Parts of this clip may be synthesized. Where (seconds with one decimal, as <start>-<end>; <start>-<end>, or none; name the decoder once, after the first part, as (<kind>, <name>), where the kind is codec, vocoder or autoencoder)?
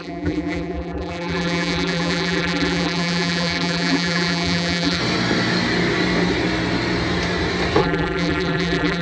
0.0-5.0 (vocoder, BigVGAN v2); 7.8-9.0